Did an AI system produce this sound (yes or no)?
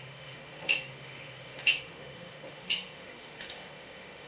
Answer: yes